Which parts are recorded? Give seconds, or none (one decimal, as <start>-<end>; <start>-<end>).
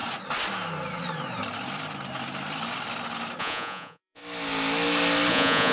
0.0-3.4; 4.2-5.3